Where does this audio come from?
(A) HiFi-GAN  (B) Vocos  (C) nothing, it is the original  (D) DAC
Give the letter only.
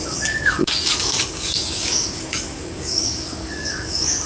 D